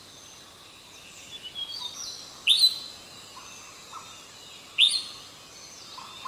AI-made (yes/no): no